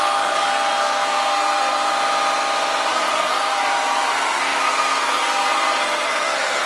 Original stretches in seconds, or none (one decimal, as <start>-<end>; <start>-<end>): 1.9-2.9